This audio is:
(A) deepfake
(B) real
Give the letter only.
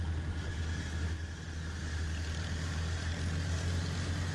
B